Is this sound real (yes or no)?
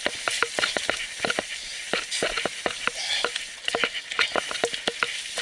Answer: yes